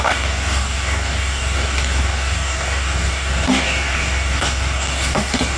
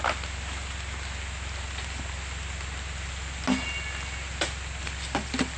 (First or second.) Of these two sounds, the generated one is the first